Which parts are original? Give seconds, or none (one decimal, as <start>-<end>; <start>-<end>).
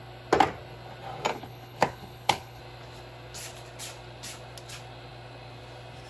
0.0-1.3; 2.6-6.1